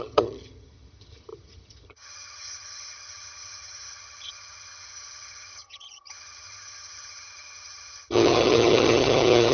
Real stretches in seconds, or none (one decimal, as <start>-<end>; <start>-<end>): none